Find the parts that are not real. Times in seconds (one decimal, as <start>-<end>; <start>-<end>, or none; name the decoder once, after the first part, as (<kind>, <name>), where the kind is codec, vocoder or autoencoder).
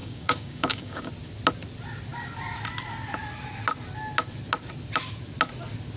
0.0-1.1 (codec, DAC)